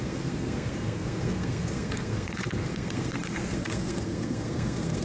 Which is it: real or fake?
fake